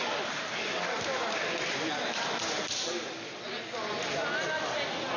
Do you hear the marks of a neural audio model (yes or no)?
no